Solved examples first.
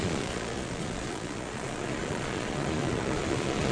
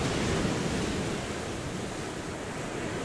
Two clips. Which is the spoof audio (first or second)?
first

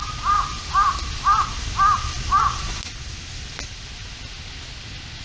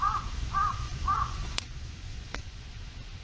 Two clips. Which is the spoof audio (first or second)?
second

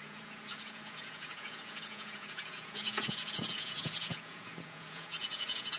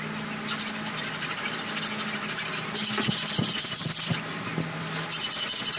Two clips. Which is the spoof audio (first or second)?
first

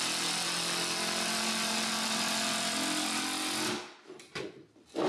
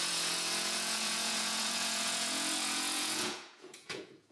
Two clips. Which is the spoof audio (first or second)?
second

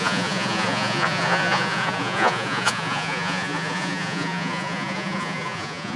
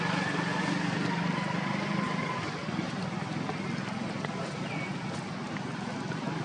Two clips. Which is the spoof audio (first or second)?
first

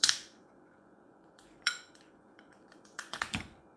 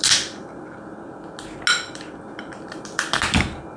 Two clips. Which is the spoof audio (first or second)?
first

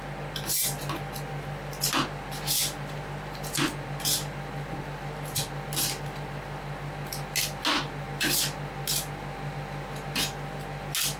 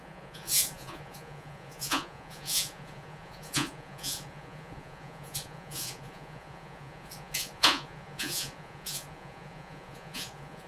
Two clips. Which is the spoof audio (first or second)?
second